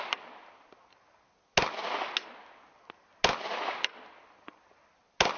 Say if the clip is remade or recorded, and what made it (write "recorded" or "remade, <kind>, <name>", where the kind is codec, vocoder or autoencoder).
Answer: recorded